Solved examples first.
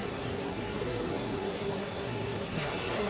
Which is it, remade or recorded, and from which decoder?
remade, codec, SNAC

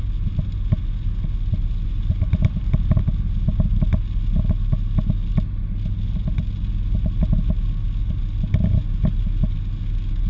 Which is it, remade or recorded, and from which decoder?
recorded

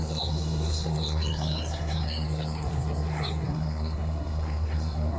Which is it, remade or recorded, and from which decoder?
remade, codec, SNAC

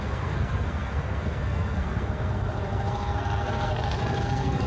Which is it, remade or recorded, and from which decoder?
remade, codec, SNAC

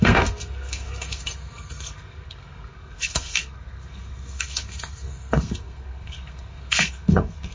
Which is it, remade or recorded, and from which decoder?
remade, codec, SNAC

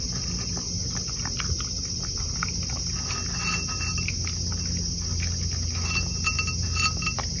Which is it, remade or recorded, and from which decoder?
recorded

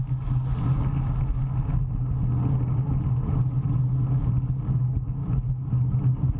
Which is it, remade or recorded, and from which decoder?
recorded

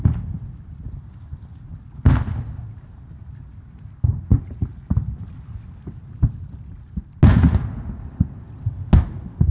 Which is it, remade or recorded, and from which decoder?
recorded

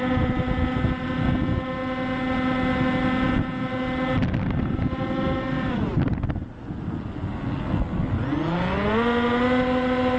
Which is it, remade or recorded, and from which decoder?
recorded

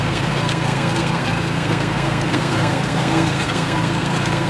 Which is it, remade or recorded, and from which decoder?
remade, codec, SNAC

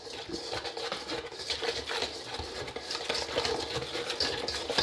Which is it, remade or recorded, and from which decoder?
recorded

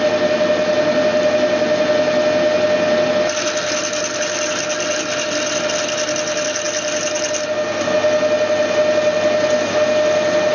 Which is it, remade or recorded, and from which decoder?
recorded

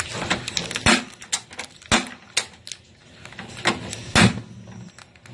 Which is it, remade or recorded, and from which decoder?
recorded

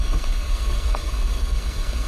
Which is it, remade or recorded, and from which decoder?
remade, codec, SNAC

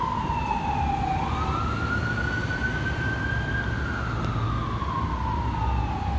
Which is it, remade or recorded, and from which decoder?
recorded